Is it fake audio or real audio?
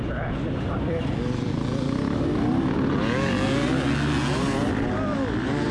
real